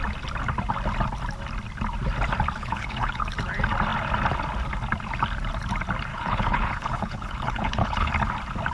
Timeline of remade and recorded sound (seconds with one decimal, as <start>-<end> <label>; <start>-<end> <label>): 0.0-2.6 recorded; 2.6-3.2 remade; 3.2-6.1 recorded; 6.1-8.1 remade; 8.1-8.7 recorded